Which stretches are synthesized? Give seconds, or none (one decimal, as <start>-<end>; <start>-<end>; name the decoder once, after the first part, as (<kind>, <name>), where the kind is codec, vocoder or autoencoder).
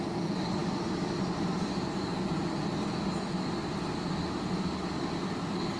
none